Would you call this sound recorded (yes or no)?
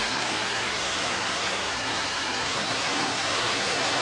no